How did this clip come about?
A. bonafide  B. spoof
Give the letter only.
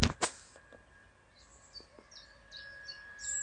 A